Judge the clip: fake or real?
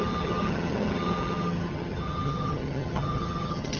fake